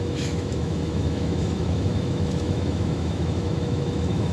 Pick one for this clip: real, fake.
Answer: fake